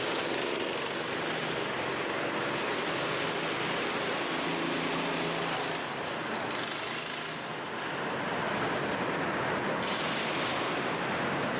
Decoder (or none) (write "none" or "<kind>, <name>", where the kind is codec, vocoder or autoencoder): none